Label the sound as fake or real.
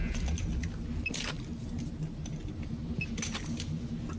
real